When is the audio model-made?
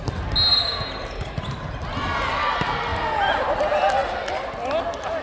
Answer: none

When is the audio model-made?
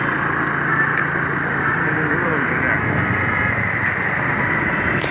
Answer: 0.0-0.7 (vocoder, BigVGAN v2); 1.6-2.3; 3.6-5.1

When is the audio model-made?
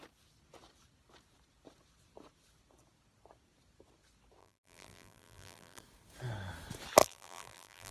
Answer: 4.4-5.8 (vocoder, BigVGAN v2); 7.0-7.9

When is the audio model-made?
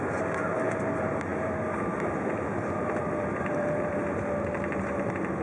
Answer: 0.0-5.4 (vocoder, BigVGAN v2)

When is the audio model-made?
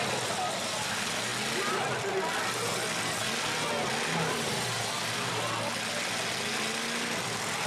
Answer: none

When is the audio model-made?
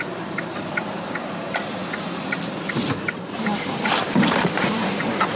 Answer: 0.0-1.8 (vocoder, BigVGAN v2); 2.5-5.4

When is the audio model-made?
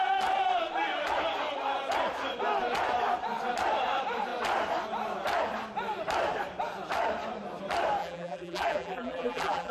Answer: 8.0-9.7 (vocoder, BigVGAN v2)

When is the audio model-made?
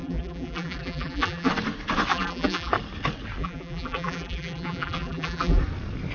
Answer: 0.0-1.5 (vocoder, BigVGAN v2); 2.1-2.7; 3.4-5.6